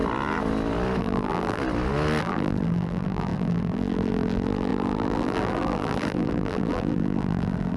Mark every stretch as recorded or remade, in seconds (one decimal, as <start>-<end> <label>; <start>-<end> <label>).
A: 0.0-1.0 recorded; 1.0-1.6 remade; 1.6-2.2 recorded; 2.2-7.8 remade